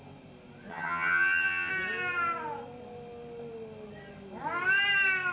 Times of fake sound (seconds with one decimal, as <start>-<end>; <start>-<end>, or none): 0.7-1.7

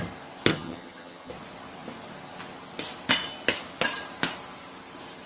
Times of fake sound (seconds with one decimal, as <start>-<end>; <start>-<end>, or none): 0.5-1.3

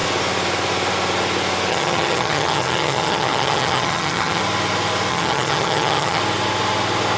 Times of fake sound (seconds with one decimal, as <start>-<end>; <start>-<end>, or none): 1.7-4.4; 5.1-6.2